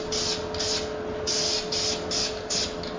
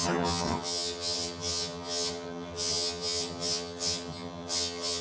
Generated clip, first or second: second